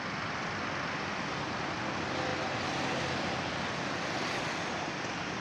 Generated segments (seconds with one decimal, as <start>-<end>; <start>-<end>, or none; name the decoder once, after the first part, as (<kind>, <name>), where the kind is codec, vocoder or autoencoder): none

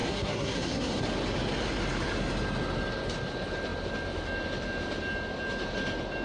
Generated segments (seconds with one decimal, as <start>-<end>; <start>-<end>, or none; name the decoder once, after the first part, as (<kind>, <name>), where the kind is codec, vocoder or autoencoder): 0.0-1.0 (codec, SNAC)

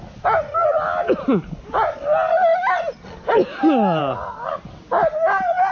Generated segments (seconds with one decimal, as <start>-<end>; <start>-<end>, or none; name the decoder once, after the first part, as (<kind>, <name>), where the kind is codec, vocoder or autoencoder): none

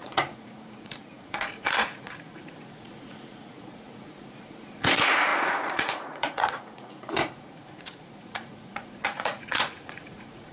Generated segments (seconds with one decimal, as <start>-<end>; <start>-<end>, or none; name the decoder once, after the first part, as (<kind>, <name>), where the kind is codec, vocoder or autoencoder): 0.0-10.5 (vocoder, Vocos)